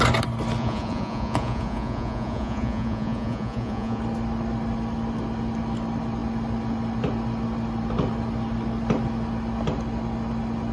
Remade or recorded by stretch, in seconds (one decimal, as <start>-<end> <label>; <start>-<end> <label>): 0.0-0.6 recorded; 0.6-4.0 remade; 4.0-10.7 recorded